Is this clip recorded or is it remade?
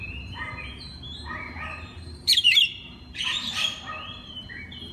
remade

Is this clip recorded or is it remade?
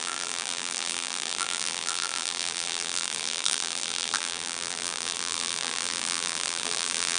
remade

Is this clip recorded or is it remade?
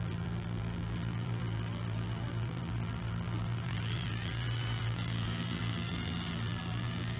remade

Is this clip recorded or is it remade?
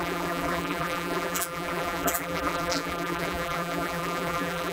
remade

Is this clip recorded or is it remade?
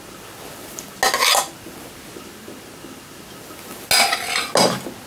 recorded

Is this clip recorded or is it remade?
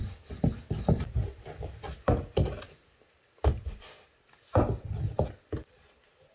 recorded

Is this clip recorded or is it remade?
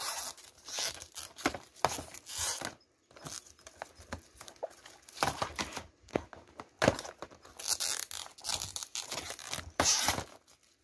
recorded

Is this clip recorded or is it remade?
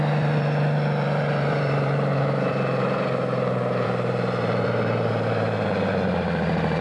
remade